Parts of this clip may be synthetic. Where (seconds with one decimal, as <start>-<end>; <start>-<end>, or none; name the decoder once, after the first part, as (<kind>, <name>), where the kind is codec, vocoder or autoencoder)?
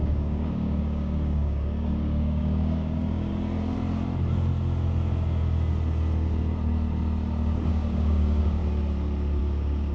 0.0-3.3 (codec, DAC); 7.7-8.6; 9.4-9.9